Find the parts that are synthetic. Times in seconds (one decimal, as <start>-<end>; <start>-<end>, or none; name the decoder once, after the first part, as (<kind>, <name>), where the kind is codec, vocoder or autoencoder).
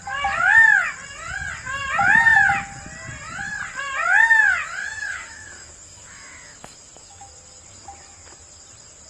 4.8-7.3 (autoencoder, DAC-VAE)